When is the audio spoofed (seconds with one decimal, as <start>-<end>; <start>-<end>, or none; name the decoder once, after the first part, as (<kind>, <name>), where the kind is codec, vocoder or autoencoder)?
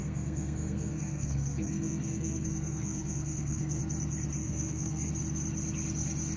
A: 0.0-3.8 (codec, SNAC); 4.4-5.1